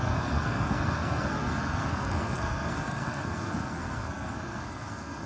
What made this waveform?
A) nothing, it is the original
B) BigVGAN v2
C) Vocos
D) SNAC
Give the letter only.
D